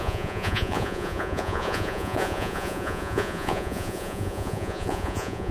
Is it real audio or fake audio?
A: fake